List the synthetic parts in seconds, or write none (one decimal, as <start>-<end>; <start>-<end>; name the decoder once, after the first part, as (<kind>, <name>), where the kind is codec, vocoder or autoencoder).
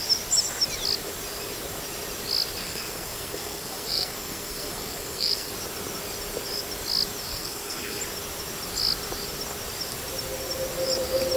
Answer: 2.6-5.5 (codec, SNAC); 7.3-8.0